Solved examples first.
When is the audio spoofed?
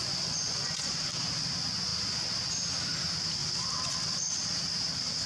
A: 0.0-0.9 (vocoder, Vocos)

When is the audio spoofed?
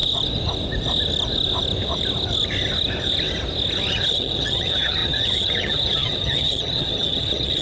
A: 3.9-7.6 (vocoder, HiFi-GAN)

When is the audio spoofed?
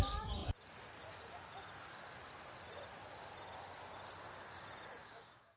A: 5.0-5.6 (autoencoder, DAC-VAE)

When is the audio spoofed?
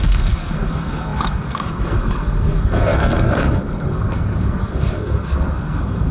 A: 0.0-6.1 (codec, SNAC)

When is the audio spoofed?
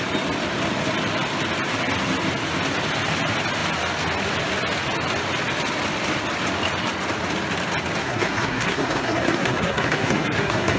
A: 8.0-10.8 (codec, SNAC)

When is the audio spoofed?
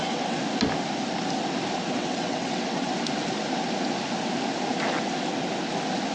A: 0.0-0.4 (vocoder, WaveNeXt); 1.9-2.9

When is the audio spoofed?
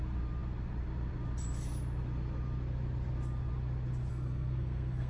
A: 4.1-5.1 (codec, SNAC)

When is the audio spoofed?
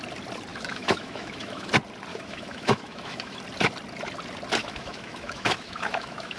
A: 0.5-1.7 (autoencoder, DAC-VAE); 2.1-3.4; 4.6-6.4